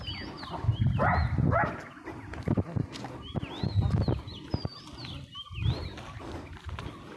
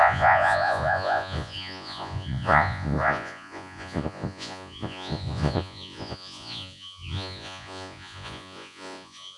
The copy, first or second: second